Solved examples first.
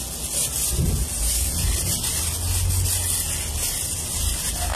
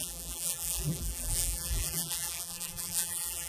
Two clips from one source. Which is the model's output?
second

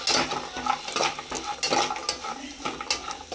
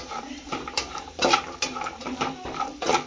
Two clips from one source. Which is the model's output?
second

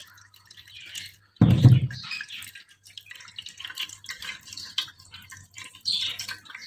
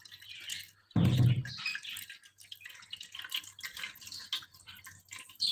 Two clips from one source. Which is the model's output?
first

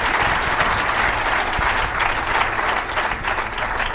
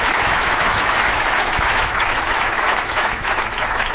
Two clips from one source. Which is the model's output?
second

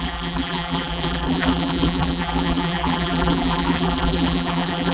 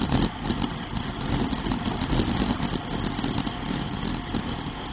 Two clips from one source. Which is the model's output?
first